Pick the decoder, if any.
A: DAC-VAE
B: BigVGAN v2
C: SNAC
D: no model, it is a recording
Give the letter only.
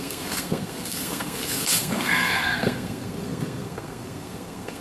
C